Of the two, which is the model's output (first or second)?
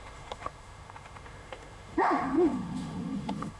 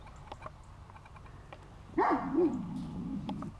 first